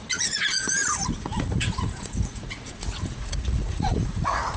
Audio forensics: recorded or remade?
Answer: remade